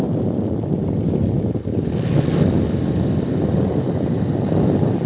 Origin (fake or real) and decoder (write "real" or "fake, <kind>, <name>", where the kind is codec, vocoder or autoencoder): real